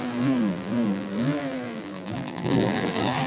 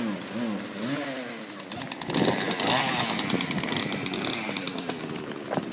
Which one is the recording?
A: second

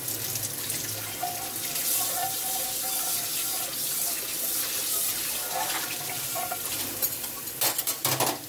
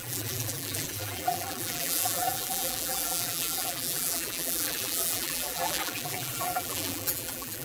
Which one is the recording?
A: first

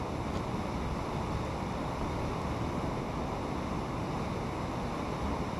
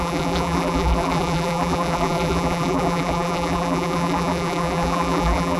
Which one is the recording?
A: first